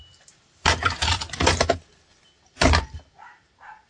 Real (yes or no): yes